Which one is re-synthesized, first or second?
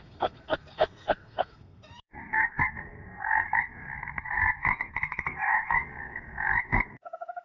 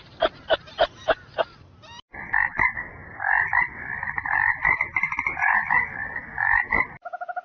first